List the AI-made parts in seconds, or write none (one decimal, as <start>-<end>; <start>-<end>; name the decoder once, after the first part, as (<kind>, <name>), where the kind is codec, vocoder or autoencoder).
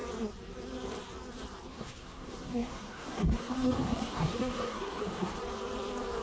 1.7-5.4 (codec, SNAC)